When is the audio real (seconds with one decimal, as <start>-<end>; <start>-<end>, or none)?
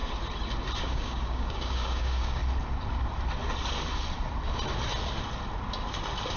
0.0-0.8; 2.4-6.4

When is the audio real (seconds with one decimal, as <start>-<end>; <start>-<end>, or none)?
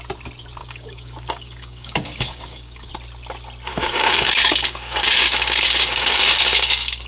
0.0-0.6; 2.9-3.7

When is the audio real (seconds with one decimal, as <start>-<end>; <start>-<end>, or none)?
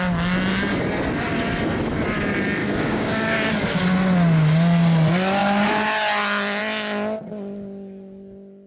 0.0-2.6; 3.5-8.7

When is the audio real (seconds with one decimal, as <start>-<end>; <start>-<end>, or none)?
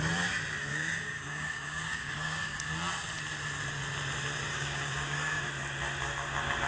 0.0-0.7; 2.7-4.5; 5.4-6.7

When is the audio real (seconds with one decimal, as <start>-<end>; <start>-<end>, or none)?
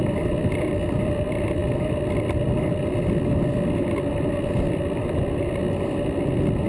0.0-6.7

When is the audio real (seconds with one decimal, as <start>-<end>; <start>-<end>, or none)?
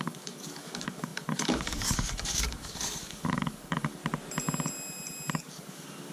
4.0-5.3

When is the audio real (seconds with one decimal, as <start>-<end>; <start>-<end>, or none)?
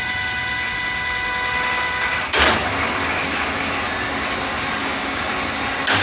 0.0-4.8; 5.3-6.0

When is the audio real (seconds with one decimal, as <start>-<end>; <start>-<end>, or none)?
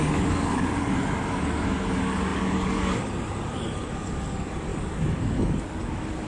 none